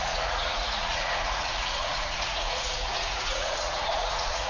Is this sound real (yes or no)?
no